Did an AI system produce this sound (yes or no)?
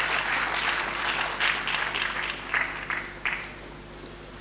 no